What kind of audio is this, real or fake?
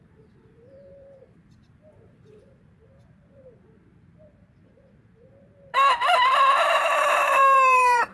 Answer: fake